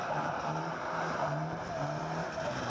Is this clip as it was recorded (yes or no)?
no